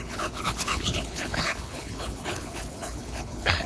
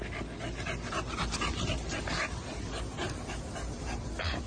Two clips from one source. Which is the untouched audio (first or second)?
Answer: second